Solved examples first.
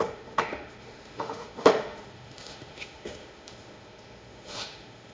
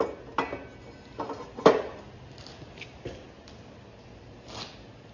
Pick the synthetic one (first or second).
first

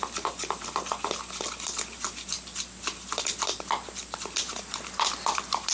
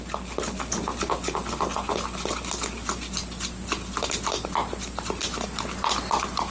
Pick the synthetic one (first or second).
first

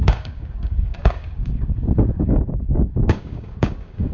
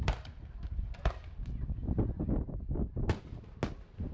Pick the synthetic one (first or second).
first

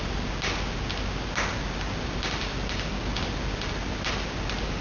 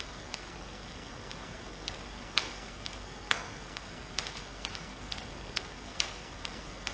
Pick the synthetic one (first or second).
second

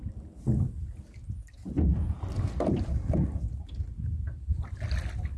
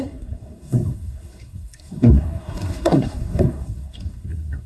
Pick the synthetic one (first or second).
second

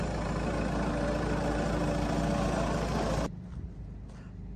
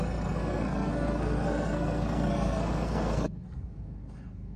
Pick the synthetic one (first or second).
second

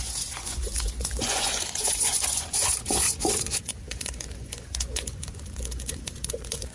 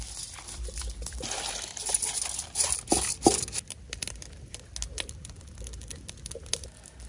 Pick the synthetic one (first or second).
first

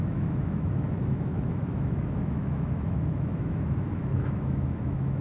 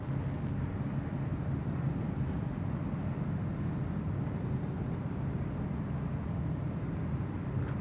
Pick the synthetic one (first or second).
first